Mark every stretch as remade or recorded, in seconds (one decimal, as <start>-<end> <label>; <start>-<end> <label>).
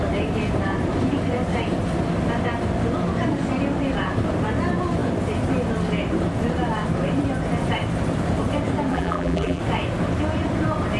0.0-8.9 recorded; 8.9-9.6 remade; 9.6-11.0 recorded